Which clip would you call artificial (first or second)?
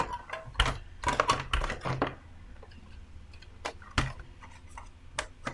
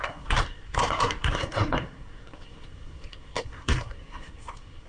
second